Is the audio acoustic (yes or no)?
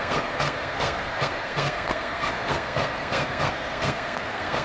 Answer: no